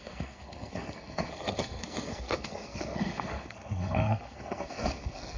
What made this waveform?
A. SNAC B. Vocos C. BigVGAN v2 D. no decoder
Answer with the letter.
A